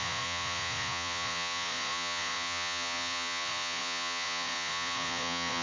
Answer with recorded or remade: remade